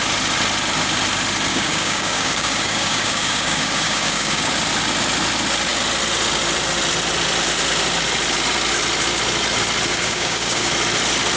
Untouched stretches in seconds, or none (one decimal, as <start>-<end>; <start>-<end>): 0.0-1.5; 4.5-9.9; 10.7-11.4